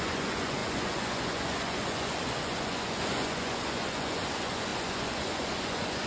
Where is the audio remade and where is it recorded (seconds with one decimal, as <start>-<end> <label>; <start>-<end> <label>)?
0.0-6.1 remade